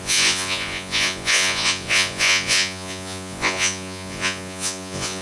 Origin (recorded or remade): remade